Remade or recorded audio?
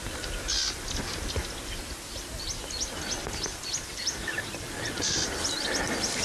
recorded